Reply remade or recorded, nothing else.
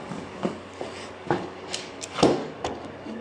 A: remade